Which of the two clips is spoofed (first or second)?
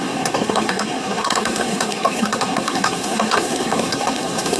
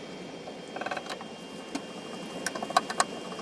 first